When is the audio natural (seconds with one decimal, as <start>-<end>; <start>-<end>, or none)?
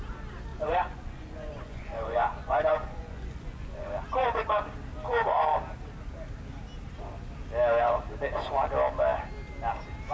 0.0-0.5; 3.9-10.1